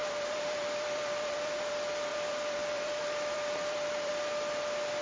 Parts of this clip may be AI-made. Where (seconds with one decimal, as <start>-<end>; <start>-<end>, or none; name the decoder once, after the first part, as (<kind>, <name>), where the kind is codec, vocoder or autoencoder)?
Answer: 0.0-1.7 (vocoder, BigVGAN v2); 2.1-4.1